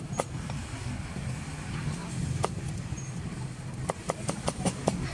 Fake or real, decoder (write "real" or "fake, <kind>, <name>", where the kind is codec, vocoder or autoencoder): real